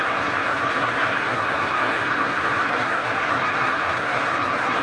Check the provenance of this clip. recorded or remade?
remade